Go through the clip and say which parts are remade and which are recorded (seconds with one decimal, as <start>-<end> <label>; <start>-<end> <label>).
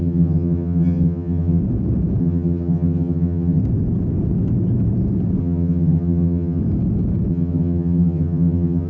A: 0.0-1.6 remade; 1.6-2.2 recorded; 2.2-3.6 remade; 3.6-5.4 recorded; 5.4-6.6 remade; 6.6-7.3 recorded; 7.3-8.9 remade